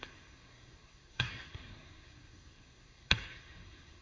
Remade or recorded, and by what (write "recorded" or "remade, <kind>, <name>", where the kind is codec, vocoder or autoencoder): remade, codec, SNAC